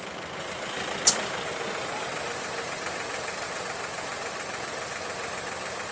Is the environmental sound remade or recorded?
recorded